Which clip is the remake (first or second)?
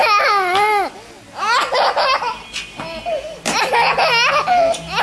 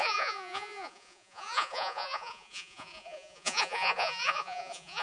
second